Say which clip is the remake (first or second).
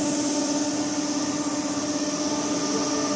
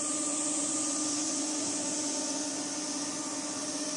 second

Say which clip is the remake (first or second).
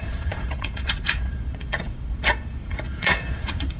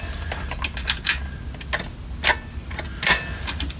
first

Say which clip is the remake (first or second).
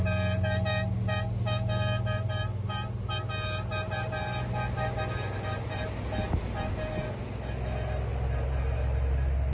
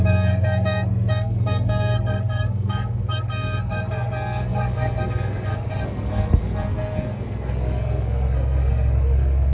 second